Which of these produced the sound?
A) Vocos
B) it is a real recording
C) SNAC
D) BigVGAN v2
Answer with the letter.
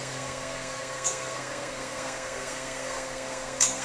C